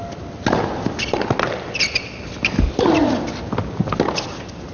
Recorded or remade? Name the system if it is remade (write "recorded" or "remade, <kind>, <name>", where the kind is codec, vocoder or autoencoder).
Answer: recorded